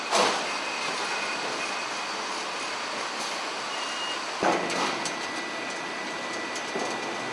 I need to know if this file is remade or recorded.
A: recorded